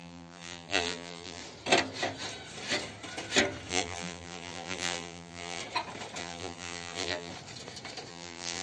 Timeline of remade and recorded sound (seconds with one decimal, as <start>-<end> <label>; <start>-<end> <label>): 0.0-1.4 remade; 1.4-3.7 recorded; 3.7-5.6 remade; 5.6-6.2 recorded; 6.2-7.3 remade; 7.3-8.1 recorded; 8.1-8.6 remade